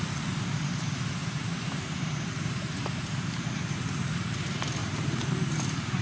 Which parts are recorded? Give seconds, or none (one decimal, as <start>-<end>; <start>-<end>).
0.0-1.2; 3.4-4.8; 5.3-6.0